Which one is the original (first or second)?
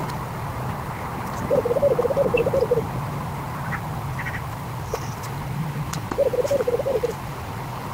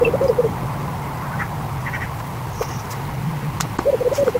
second